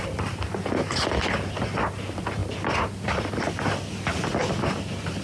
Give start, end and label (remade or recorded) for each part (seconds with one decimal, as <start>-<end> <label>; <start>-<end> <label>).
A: 0.0-5.2 recorded